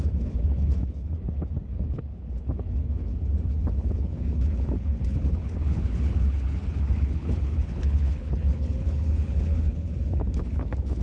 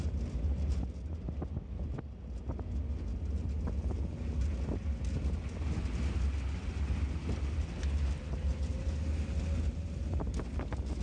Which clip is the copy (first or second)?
first